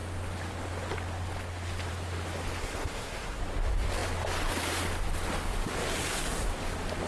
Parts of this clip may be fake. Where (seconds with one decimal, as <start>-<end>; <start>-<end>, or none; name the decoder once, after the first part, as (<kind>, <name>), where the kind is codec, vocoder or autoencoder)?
2.6-3.4 (codec, SNAC)